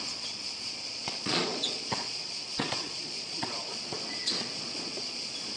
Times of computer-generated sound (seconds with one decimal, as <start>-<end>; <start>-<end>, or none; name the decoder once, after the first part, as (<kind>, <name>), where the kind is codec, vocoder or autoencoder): 0.0-5.6 (vocoder, Vocos)